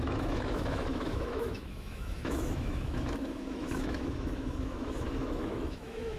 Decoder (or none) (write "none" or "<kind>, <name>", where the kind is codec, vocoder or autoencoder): autoencoder, DAC-VAE